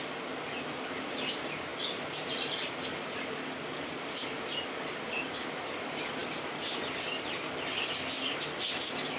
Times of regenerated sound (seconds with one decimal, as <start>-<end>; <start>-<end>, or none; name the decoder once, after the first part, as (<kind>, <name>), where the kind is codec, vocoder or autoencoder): 6.2-7.4 (vocoder, BigVGAN v2)